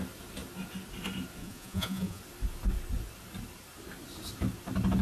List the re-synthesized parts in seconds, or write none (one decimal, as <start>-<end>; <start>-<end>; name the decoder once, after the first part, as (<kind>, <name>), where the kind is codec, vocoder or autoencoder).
1.4-2.2 (vocoder, Vocos)